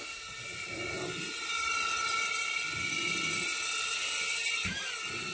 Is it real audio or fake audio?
real